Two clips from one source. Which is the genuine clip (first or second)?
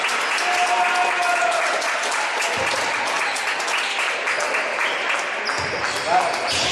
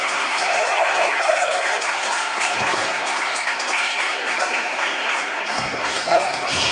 first